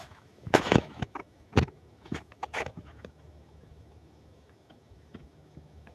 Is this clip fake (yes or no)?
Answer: yes